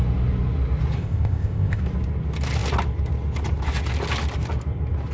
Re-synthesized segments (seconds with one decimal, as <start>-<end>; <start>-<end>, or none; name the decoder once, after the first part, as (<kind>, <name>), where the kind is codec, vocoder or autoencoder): 1.0-1.8 (codec, ZipCodec)